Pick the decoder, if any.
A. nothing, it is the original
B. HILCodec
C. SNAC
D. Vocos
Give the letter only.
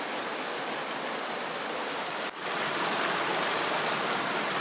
A